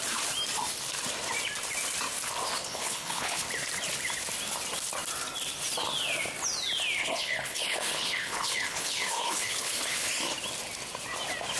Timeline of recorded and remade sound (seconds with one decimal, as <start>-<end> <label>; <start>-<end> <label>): 0.0-2.6 recorded; 2.6-3.5 remade; 3.5-7.0 recorded; 7.0-10.1 remade; 10.1-11.6 recorded